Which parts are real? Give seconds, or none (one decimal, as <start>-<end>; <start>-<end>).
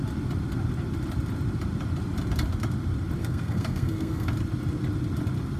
0.0-3.2; 4.3-5.6